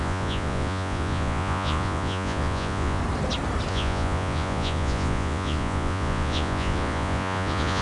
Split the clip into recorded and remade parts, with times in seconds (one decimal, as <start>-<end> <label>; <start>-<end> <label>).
0.0-3.0 remade; 3.0-3.7 recorded; 3.7-7.8 remade